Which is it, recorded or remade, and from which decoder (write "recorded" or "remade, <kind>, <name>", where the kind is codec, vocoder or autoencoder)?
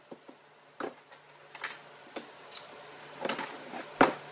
recorded